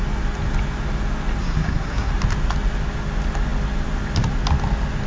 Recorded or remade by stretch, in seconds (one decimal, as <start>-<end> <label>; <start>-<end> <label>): 0.0-1.4 recorded; 1.4-2.1 remade; 2.1-5.1 recorded